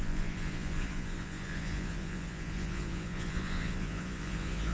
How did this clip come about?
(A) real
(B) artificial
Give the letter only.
B